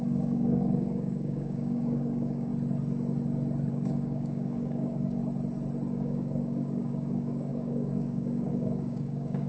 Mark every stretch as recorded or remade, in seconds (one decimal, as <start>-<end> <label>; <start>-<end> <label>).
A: 0.0-2.5 remade; 2.5-3.7 recorded; 3.7-5.2 remade; 5.2-5.9 recorded; 5.9-9.5 remade